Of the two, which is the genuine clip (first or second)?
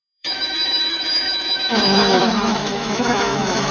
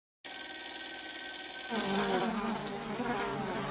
second